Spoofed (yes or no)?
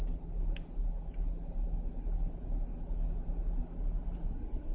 no